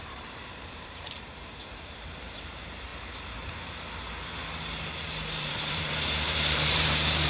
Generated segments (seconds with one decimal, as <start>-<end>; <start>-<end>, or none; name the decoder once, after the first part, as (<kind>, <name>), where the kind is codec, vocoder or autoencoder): 0.0-2.9 (vocoder, BigVGAN v2); 5.4-7.3